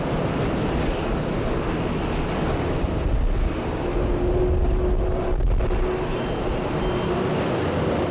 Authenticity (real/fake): real